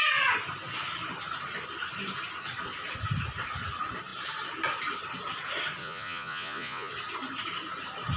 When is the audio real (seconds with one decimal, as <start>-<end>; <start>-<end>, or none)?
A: 0.0-5.8; 6.9-8.2